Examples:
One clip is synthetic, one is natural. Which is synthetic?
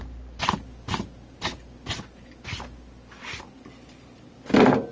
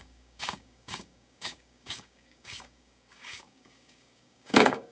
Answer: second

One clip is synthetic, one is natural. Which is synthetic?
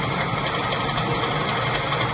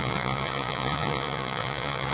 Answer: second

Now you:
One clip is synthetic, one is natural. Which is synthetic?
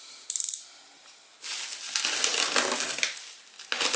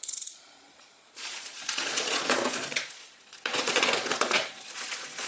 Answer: second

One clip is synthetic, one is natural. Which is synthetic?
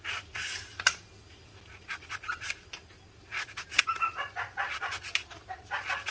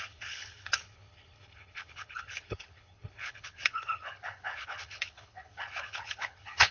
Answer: second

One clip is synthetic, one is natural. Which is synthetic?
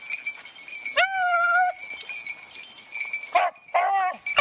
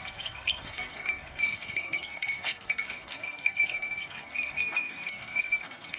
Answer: second